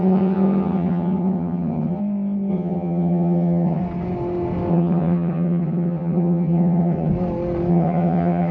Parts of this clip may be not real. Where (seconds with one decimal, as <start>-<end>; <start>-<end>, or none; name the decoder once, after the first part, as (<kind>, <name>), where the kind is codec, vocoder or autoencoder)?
0.0-2.0 (vocoder, HiFi-GAN); 2.5-3.8; 4.7-7.1; 7.7-8.5